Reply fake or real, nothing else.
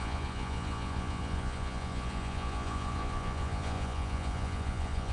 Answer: fake